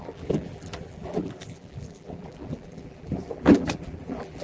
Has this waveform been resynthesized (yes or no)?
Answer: yes